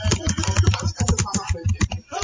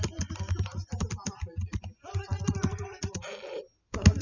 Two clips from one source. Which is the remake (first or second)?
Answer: first